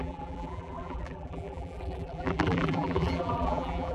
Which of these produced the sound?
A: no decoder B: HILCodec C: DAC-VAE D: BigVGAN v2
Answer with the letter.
D